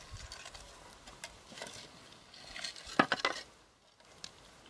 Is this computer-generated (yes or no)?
no